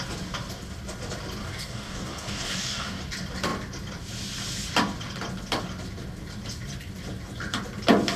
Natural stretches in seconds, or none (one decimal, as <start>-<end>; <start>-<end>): 0.0-1.4; 3.0-8.2